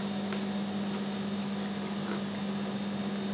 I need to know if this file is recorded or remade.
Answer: recorded